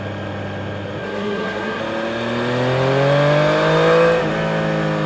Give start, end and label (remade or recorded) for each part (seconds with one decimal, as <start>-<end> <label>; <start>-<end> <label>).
0.0-1.0 recorded; 1.0-1.8 remade; 1.8-5.1 recorded